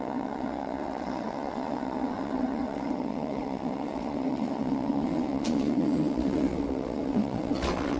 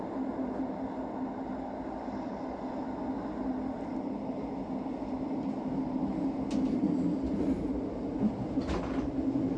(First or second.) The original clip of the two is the second